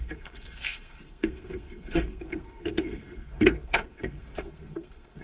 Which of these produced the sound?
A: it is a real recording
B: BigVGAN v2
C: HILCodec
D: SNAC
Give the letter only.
D